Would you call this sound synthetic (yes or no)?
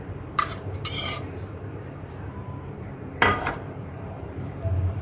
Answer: yes